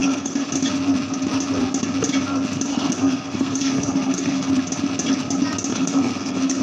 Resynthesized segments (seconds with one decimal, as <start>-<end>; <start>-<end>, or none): 0.0-0.5; 2.7-4.5; 5.7-6.6